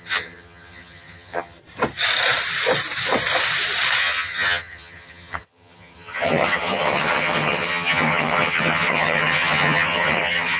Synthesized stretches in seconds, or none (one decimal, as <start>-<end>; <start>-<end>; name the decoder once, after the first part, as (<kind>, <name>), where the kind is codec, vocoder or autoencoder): 0.0-1.6 (vocoder, HiFi-GAN); 4.0-10.6